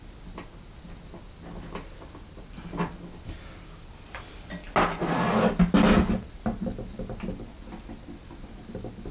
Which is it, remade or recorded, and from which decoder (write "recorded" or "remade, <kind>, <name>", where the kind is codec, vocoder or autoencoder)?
recorded